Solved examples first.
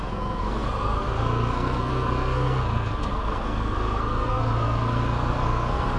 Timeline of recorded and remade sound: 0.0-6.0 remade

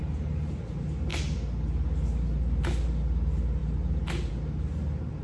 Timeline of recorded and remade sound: 0.0-5.2 recorded

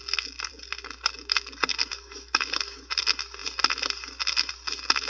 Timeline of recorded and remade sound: 0.0-1.9 recorded; 1.9-3.0 remade; 3.0-5.1 recorded

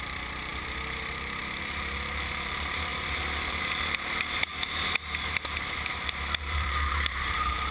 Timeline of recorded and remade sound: 0.0-4.5 remade; 4.5-5.2 recorded; 5.2-7.7 remade

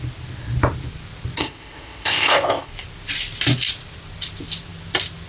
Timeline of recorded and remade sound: 0.0-1.4 recorded; 1.4-2.7 remade; 2.7-5.3 recorded

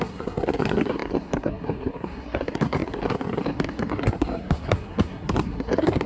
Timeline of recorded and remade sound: 0.0-6.1 remade

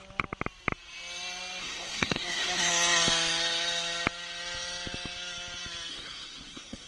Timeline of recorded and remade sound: 0.0-1.6 recorded; 1.6-2.7 remade; 2.7-5.9 recorded; 5.9-6.9 remade

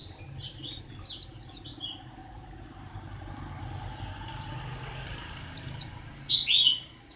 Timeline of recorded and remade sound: 0.0-0.8 remade; 0.8-2.2 recorded; 2.2-3.3 remade; 3.3-7.2 recorded